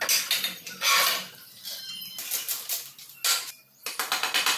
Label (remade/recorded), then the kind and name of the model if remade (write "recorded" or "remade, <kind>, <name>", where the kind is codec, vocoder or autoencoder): recorded